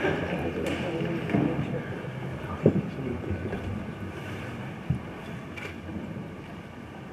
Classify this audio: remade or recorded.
recorded